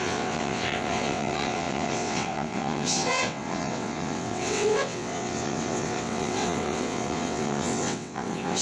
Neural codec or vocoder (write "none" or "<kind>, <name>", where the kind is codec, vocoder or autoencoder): vocoder, WaveNeXt